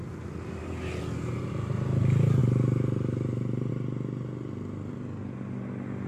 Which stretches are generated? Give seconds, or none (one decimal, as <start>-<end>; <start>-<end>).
none